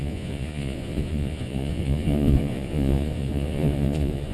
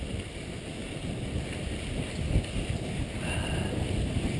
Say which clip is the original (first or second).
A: second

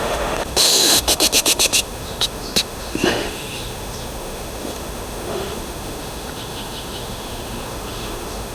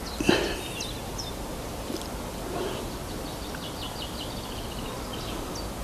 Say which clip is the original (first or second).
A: second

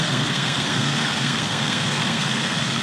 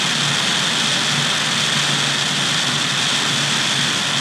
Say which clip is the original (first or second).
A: second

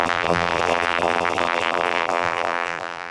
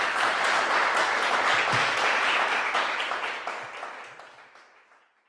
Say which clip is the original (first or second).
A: second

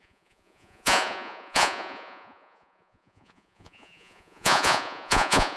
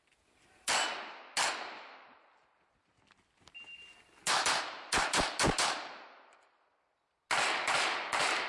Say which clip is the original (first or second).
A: second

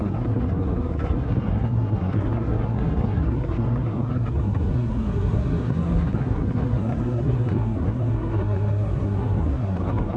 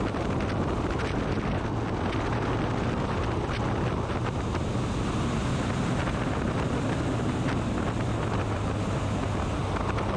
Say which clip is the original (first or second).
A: second